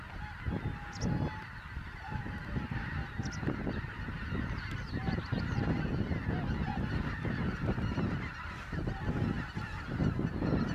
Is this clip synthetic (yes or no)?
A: no